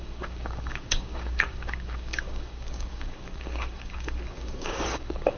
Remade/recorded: remade